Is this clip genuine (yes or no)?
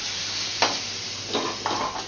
yes